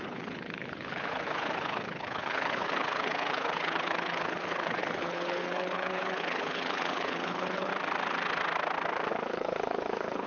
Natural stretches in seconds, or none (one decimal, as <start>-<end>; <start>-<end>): 7.7-9.1